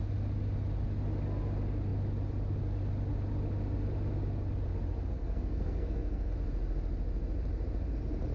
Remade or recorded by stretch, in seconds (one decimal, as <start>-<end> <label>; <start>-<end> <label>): 0.0-5.2 recorded; 5.2-6.3 remade; 6.3-8.3 recorded